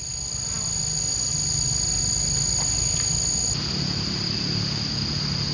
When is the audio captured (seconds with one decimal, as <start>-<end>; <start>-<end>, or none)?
0.0-5.5